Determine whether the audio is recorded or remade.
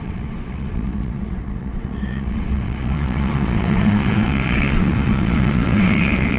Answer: remade